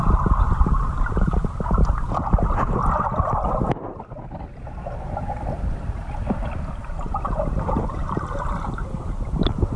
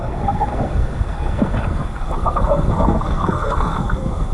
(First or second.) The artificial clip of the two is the second